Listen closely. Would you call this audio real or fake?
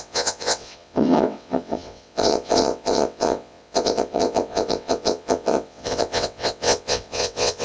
fake